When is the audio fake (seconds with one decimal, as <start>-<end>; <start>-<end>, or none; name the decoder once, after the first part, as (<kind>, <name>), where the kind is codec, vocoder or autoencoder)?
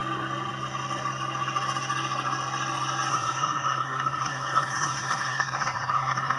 3.1-6.4 (codec, SNAC)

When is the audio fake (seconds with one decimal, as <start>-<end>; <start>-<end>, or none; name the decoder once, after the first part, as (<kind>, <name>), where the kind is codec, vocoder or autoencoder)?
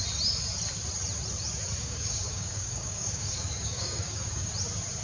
1.8-4.5 (codec, DAC)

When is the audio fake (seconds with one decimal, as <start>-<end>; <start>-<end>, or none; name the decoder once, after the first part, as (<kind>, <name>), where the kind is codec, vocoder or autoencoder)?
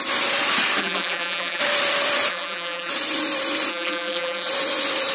0.8-1.6 (vocoder, BigVGAN v2); 2.3-2.9; 3.7-4.5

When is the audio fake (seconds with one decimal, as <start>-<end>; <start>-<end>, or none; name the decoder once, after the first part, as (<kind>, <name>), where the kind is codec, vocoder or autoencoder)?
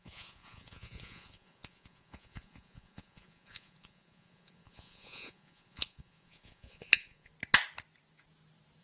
0.0-7.3 (vocoder, Vocos)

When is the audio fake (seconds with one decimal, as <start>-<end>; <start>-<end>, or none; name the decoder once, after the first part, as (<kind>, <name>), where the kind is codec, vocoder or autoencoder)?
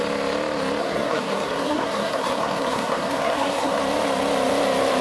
0.8-3.8 (codec, SNAC)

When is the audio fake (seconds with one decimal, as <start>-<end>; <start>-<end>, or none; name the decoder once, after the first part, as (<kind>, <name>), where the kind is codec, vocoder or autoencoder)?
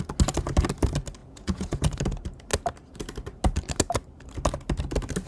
1.2-2.0 (vocoder, Vocos)